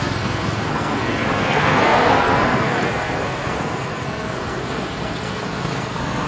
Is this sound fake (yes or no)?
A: yes